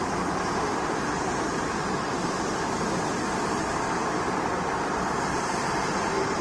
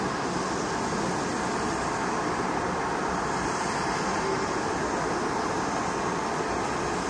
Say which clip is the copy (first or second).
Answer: first